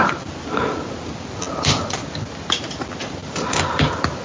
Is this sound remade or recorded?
recorded